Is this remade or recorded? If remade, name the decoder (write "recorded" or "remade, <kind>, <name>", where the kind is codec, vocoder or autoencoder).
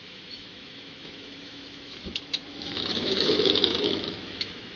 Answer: remade, autoencoder, DAC-VAE